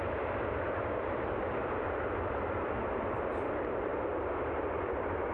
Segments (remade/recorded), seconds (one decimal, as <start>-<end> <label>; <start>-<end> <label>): 0.0-3.9 remade; 3.9-4.5 recorded; 4.5-5.3 remade